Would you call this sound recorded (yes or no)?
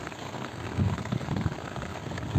no